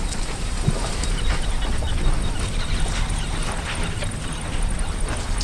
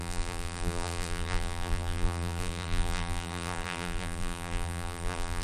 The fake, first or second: second